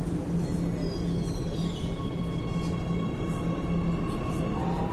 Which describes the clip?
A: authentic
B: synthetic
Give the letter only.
A